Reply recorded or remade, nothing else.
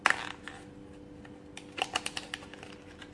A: recorded